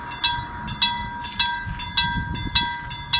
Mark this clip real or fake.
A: real